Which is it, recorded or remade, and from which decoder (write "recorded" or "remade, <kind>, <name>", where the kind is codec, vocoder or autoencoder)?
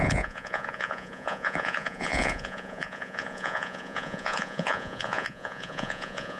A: remade, vocoder, Vocos